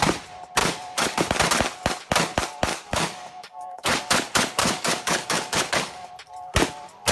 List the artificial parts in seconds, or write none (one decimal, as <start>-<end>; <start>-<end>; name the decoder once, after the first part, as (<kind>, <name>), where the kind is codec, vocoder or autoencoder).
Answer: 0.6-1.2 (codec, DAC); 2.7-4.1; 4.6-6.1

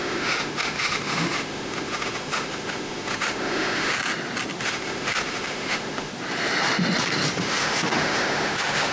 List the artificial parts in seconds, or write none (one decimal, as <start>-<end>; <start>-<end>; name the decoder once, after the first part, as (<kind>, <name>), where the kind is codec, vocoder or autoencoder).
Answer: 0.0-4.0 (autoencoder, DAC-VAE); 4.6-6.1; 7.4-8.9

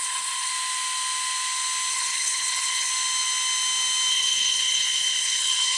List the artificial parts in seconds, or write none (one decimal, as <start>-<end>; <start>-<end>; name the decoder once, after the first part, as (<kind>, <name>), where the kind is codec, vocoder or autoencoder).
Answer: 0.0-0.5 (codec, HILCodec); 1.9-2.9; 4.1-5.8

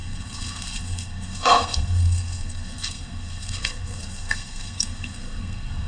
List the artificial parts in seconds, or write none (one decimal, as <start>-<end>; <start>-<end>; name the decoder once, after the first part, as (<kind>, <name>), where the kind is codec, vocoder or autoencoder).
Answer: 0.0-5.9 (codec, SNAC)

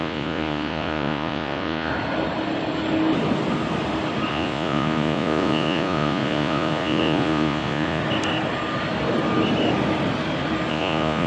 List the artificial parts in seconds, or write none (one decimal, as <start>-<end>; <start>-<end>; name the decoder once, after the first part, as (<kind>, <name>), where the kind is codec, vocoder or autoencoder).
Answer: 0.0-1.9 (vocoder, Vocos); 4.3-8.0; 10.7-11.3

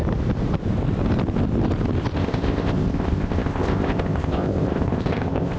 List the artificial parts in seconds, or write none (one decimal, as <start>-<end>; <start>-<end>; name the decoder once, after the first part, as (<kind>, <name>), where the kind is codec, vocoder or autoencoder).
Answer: 2.2-5.6 (codec, ZipCodec)

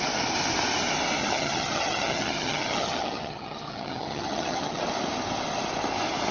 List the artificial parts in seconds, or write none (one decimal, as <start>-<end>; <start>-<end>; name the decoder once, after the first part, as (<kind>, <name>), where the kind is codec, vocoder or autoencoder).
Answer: 1.2-4.8 (vocoder, HiFi-GAN)

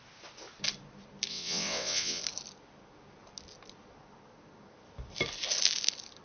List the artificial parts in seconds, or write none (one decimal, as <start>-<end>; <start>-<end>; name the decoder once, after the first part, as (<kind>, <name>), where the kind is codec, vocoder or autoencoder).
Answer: 1.3-2.2 (vocoder, WaveNeXt)